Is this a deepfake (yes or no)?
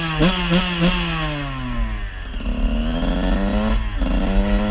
no